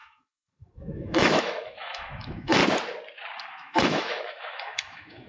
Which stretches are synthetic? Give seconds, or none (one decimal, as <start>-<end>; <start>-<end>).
0.0-2.6; 3.5-5.3